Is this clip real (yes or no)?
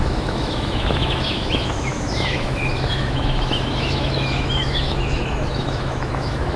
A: no